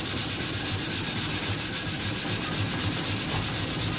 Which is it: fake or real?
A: real